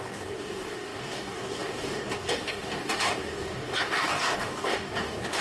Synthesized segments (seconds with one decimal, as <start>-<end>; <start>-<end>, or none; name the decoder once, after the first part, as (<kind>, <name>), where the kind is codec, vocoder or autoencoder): 0.0-5.4 (codec, DAC)